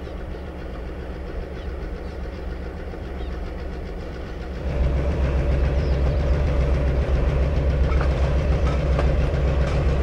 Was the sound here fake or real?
fake